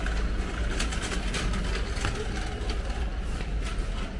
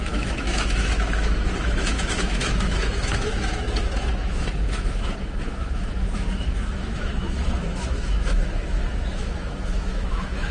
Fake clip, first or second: second